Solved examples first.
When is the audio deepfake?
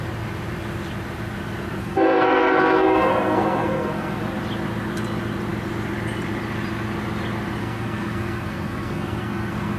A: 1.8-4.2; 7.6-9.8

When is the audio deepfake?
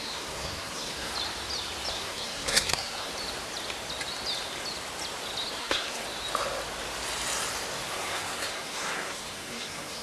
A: 0.0-1.1; 1.9-3.1; 5.6-6.0; 7.9-10.0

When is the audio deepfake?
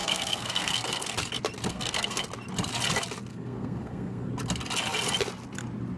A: 0.0-1.1; 1.7-2.3; 3.3-4.3